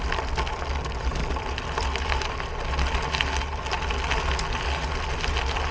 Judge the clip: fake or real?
real